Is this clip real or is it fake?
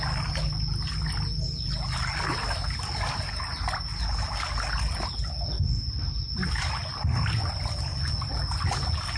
real